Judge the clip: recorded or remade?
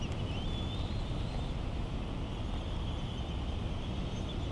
recorded